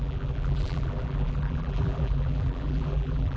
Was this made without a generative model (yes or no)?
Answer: no